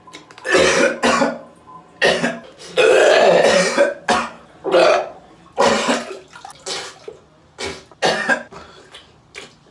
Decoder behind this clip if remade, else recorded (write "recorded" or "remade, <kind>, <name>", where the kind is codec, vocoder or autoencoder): recorded